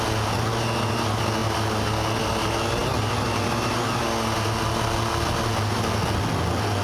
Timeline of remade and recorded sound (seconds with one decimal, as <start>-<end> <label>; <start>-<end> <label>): 0.0-6.8 recorded